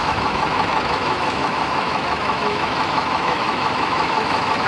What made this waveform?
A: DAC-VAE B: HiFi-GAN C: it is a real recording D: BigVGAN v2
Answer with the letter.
A